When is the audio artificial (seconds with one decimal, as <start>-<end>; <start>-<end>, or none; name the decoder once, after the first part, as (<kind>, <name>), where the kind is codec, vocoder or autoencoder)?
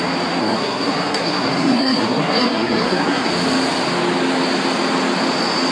0.4-3.3 (codec, SNAC)